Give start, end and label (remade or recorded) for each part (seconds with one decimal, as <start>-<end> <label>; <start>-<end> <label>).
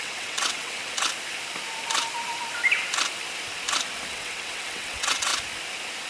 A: 0.0-0.8 remade; 0.8-4.1 recorded; 4.1-5.3 remade; 5.3-6.1 recorded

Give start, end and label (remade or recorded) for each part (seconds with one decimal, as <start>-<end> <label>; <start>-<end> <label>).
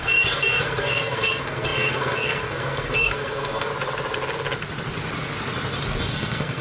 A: 0.0-3.7 remade; 3.7-6.1 recorded; 6.1-6.6 remade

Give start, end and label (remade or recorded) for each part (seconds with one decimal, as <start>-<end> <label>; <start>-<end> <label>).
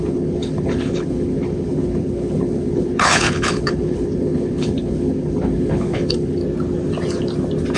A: 0.0-6.4 remade; 6.4-7.8 recorded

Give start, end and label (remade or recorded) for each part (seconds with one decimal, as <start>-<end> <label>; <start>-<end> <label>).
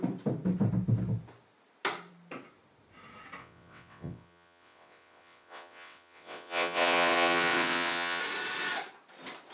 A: 0.0-3.4 recorded; 3.4-8.2 remade; 8.2-9.5 recorded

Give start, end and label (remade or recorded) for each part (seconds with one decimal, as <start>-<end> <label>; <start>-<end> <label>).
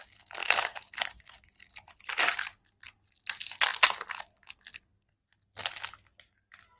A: 0.0-0.4 recorded; 0.4-2.1 remade; 2.1-6.8 recorded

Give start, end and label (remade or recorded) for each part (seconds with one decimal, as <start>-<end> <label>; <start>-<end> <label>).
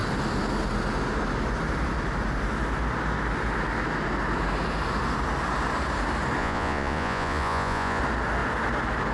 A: 0.0-6.4 recorded; 6.4-8.0 remade; 8.0-9.1 recorded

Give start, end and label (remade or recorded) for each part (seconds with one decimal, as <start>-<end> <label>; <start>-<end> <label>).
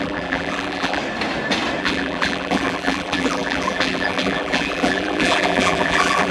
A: 0.0-1.0 remade; 1.0-1.8 recorded; 1.8-6.3 remade